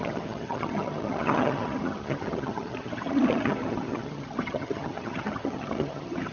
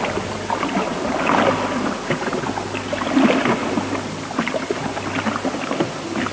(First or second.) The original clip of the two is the second